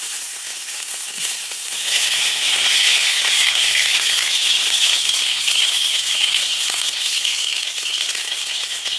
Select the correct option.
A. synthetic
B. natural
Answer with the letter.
A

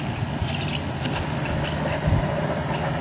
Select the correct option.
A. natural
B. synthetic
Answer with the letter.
A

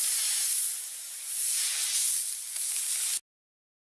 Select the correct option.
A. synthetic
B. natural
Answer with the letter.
B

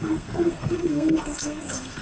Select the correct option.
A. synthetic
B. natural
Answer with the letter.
A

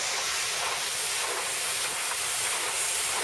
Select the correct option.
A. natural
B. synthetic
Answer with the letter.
A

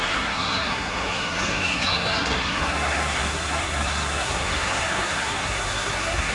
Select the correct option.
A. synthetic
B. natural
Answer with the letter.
A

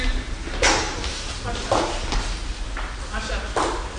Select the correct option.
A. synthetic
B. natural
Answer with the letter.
B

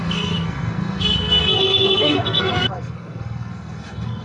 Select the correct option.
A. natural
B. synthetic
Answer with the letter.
B